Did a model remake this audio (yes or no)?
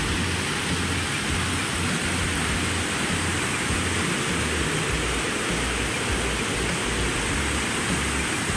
no